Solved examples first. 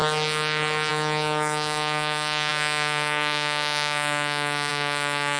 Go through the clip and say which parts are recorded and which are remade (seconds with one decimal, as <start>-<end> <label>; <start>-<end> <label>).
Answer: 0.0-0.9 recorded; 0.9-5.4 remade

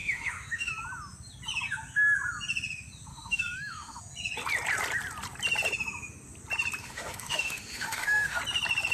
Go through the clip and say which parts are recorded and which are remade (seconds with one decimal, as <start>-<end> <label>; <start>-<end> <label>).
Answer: 0.0-0.7 remade; 0.7-3.1 recorded; 3.1-4.0 remade; 4.0-6.8 recorded; 6.8-8.4 remade; 8.4-8.9 recorded

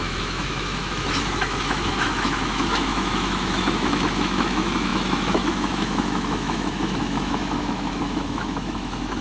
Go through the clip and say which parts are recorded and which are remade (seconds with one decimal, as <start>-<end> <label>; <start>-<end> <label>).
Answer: 0.0-9.2 remade

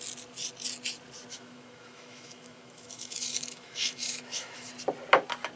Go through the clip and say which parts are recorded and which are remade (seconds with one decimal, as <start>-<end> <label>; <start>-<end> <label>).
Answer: 0.0-1.3 recorded; 1.3-4.7 remade; 4.7-5.6 recorded

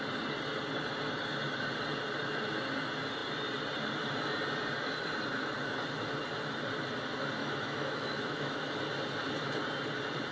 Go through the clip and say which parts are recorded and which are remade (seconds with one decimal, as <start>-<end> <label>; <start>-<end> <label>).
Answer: 0.0-7.4 recorded; 7.4-8.8 remade; 8.8-10.3 recorded

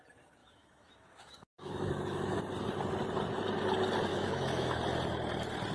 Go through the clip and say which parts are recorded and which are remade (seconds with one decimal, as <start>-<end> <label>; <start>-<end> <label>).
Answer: 0.0-0.4 recorded; 0.4-2.4 remade; 2.4-4.1 recorded; 4.1-4.8 remade; 4.8-5.7 recorded

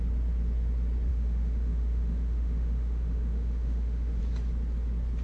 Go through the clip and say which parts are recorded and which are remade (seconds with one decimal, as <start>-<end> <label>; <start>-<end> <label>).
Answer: 0.0-1.1 recorded; 1.1-4.2 remade; 4.2-5.2 recorded